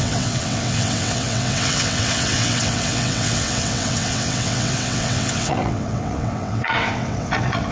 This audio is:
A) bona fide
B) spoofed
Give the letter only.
B